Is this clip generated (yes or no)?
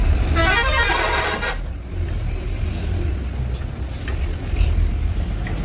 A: no